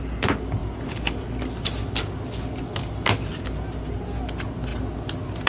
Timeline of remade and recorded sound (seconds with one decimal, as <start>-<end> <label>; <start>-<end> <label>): 0.0-5.5 recorded